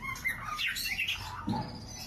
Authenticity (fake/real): real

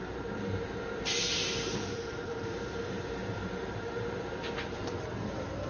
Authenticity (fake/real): fake